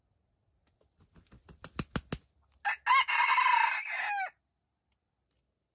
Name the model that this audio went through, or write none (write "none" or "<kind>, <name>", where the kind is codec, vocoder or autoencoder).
none